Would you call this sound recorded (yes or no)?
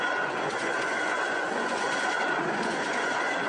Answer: no